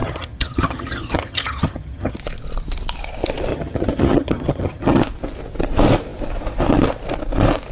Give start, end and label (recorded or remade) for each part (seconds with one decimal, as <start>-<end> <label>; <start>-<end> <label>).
0.0-2.2 remade; 2.2-3.5 recorded; 3.5-5.0 remade; 5.0-7.7 recorded